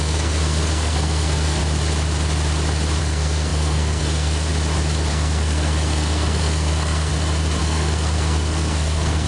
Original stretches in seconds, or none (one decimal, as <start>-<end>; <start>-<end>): 1.6-3.0; 4.5-5.1; 7.1-7.6